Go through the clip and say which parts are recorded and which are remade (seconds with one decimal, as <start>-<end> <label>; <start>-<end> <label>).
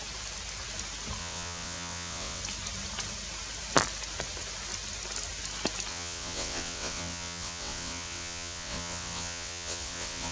0.0-1.2 recorded; 1.2-2.4 remade; 2.4-5.9 recorded; 5.9-10.3 remade